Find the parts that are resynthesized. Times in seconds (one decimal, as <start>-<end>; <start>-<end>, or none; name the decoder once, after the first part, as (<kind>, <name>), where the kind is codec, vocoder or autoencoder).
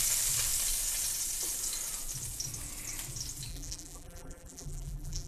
3.5-5.3 (vocoder, BigVGAN v2)